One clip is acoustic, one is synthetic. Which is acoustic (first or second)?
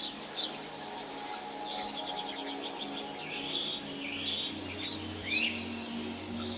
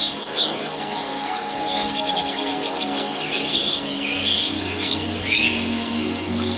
first